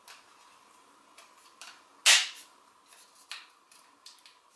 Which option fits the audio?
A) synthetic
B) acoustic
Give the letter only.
B